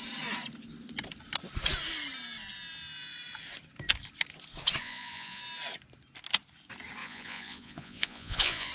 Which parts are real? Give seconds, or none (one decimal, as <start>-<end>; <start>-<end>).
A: 0.0-4.8; 5.4-7.0